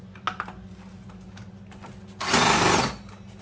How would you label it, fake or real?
real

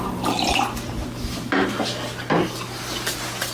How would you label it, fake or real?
real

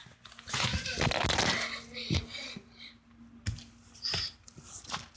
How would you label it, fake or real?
real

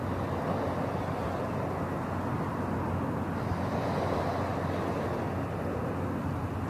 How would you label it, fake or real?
real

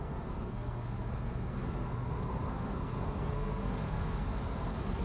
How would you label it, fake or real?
fake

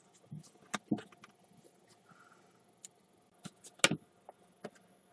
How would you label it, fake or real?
real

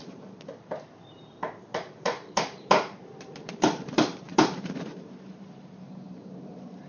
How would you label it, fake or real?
fake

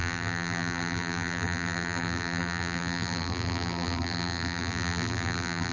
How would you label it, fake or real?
fake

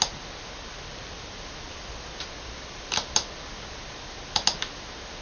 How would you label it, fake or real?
real